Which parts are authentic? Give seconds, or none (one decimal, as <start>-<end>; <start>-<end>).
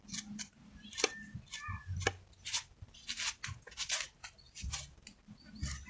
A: 0.0-5.9